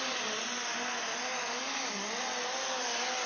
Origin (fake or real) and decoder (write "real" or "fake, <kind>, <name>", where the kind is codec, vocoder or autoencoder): real